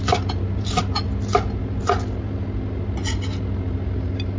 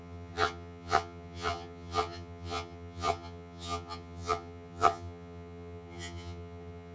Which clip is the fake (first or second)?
second